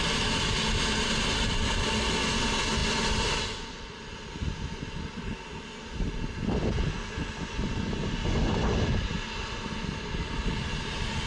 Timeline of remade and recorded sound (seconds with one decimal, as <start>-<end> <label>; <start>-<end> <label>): 0.0-11.3 recorded

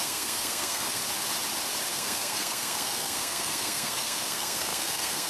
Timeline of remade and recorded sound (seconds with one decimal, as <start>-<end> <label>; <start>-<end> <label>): 0.0-1.0 remade; 1.0-1.9 recorded; 1.9-5.3 remade

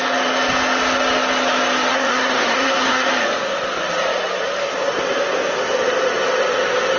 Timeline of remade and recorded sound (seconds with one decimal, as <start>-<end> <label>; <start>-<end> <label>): 0.0-1.9 recorded; 1.9-3.1 remade; 3.1-7.0 recorded

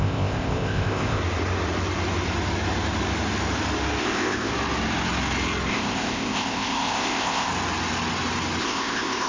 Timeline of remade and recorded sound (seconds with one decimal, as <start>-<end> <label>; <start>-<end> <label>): 0.0-1.2 remade; 1.2-4.0 recorded; 4.0-4.5 remade; 4.5-5.7 recorded; 5.7-7.5 remade; 7.5-8.6 recorded; 8.6-9.3 remade

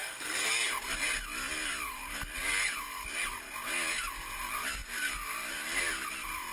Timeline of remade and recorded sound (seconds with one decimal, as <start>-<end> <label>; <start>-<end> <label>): 0.0-0.5 remade; 0.5-6.5 recorded

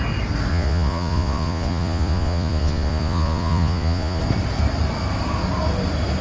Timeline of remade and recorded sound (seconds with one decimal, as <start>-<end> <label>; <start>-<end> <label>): 0.0-0.5 recorded; 0.5-4.2 remade; 4.2-6.2 recorded

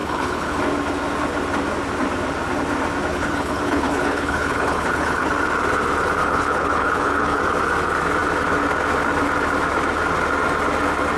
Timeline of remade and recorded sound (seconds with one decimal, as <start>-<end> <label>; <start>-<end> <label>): 0.0-0.6 remade; 0.6-3.1 recorded; 3.1-5.3 remade; 5.3-6.2 recorded; 6.2-7.4 remade; 7.4-11.2 recorded

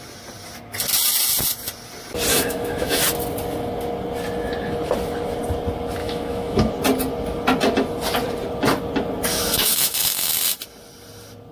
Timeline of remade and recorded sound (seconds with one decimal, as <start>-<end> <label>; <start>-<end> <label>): 0.0-2.3 recorded; 2.3-3.0 remade; 3.0-6.0 recorded; 6.0-6.7 remade; 6.7-9.3 recorded; 9.3-10.3 remade; 10.3-11.5 recorded